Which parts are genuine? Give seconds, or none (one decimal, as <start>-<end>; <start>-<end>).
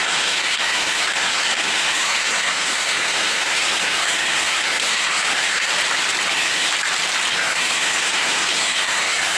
5.7-6.3; 6.7-7.3